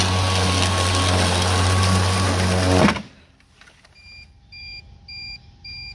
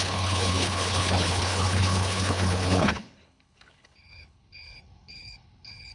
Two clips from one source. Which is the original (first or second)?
first